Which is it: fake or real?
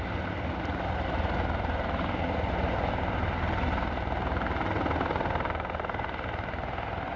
real